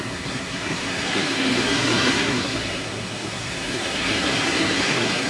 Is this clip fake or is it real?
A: fake